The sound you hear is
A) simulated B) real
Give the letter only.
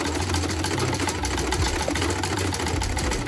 B